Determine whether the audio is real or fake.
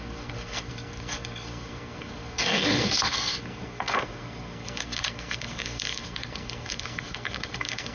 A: fake